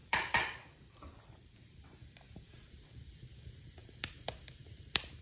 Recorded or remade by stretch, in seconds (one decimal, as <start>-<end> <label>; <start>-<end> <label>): 0.0-5.2 remade